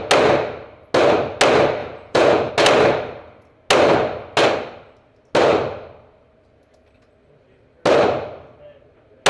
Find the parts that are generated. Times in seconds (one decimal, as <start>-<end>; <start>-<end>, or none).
1.8-2.5